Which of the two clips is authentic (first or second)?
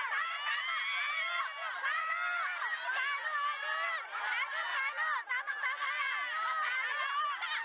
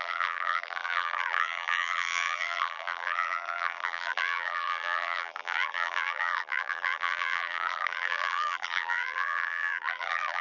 first